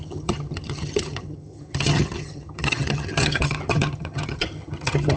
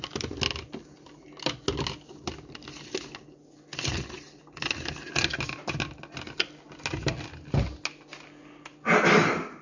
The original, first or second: second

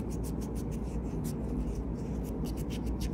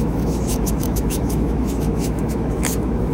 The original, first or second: first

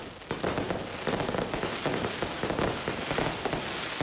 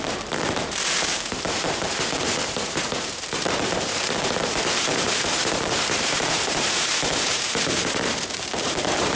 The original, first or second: first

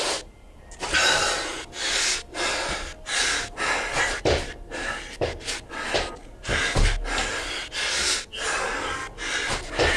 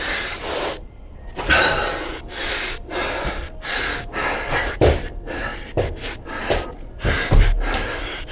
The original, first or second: first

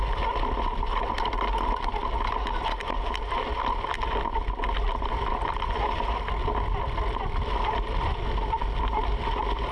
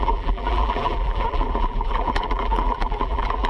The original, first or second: first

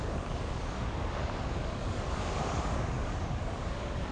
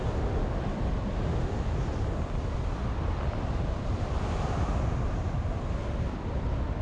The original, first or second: second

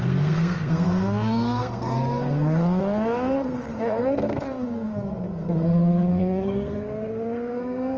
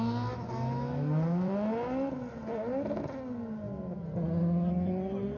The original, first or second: second